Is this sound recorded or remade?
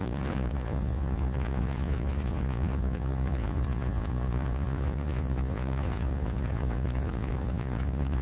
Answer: remade